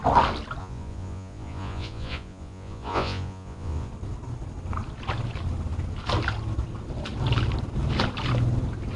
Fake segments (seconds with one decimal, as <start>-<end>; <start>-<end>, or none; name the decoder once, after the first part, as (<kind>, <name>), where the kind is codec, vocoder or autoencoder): 0.6-3.9 (vocoder, Vocos)